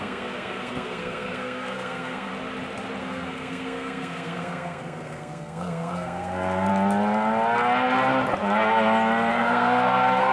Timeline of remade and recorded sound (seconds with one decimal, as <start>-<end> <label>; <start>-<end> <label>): 0.0-2.3 remade; 2.3-3.0 recorded; 3.0-6.7 remade; 6.7-9.3 recorded; 9.3-10.3 remade